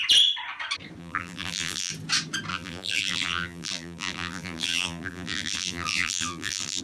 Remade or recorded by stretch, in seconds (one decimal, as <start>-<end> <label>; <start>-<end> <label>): 0.0-1.0 recorded; 1.0-1.9 remade; 1.9-2.5 recorded; 2.5-6.8 remade